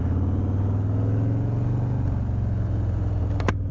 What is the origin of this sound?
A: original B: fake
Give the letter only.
A